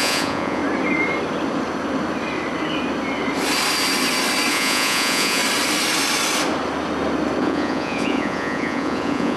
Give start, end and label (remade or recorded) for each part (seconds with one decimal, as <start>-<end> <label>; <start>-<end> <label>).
0.0-0.6 remade; 0.6-4.5 recorded; 4.5-5.4 remade; 5.4-7.4 recorded; 7.4-9.4 remade